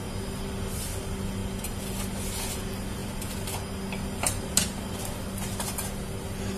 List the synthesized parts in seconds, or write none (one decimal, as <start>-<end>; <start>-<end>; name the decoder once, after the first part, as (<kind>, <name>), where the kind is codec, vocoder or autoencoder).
none